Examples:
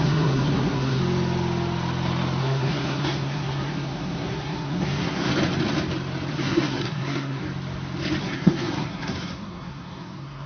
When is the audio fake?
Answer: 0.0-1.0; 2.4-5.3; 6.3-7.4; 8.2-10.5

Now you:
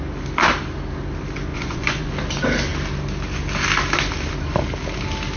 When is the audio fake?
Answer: 1.5-2.1

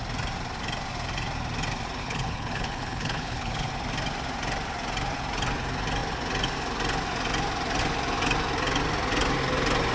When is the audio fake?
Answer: 2.0-3.7

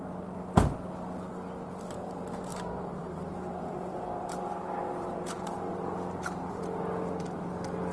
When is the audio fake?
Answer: 2.5-6.6